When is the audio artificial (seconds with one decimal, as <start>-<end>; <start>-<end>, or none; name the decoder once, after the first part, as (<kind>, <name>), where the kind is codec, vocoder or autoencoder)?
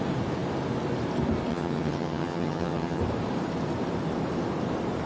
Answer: 1.5-3.0 (vocoder, HiFi-GAN)